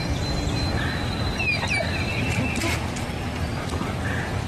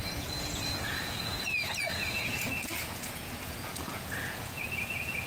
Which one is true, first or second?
first